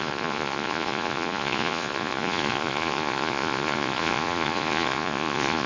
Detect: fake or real fake